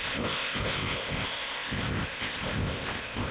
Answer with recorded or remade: remade